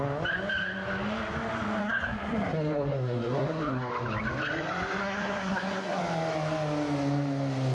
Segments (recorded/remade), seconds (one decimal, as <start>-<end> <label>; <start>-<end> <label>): 0.0-1.8 recorded; 1.8-3.9 remade; 3.9-5.0 recorded; 5.0-6.0 remade; 6.0-7.7 recorded

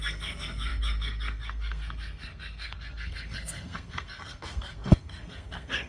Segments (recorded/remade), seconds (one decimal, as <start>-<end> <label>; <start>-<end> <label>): 0.0-5.9 remade

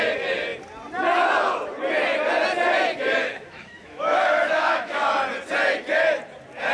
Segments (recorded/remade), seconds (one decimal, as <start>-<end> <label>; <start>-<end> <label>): 0.0-3.2 recorded; 3.2-5.1 remade; 5.1-6.7 recorded